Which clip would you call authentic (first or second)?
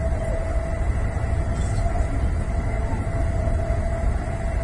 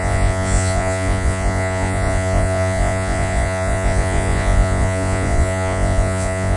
first